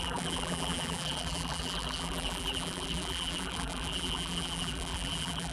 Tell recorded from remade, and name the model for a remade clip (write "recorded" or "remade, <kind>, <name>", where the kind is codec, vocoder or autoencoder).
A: remade, vocoder, BigVGAN v2